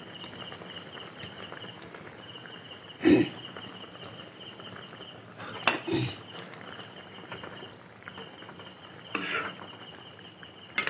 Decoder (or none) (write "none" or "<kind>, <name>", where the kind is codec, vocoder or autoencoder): none